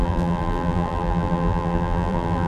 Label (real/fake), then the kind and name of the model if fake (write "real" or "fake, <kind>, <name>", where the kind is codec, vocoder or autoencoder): fake, vocoder, BigVGAN v2